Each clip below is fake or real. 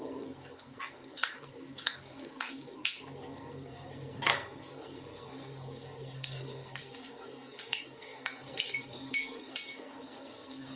fake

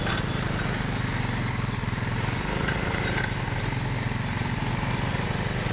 real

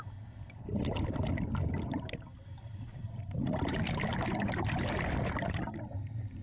real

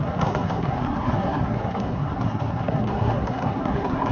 fake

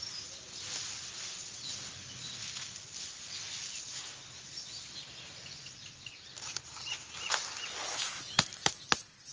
real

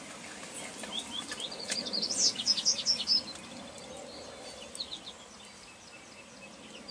real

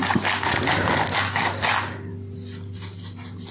real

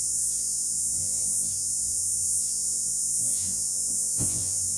fake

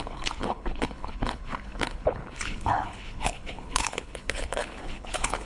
fake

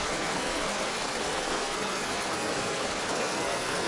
fake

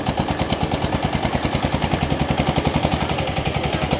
real